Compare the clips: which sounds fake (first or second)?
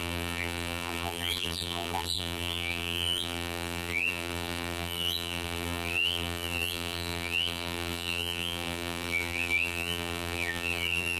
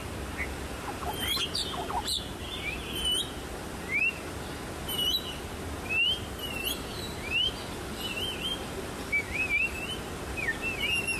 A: first